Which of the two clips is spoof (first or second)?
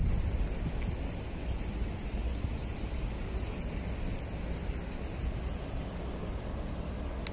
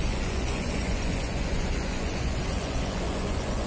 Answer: second